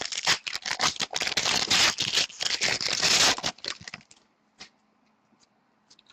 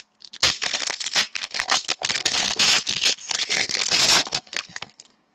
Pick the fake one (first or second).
second